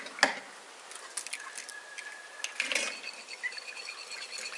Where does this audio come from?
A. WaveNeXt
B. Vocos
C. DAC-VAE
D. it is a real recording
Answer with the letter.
D